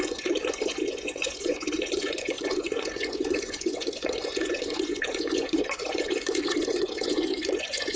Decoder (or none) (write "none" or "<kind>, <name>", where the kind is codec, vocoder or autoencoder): vocoder, Vocos